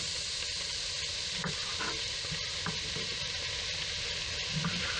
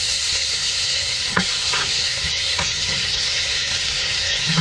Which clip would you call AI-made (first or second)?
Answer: second